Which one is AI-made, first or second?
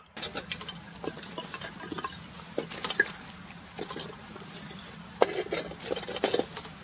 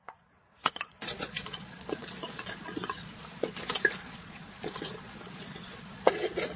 second